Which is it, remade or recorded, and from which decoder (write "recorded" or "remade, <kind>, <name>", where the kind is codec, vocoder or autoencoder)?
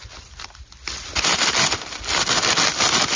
recorded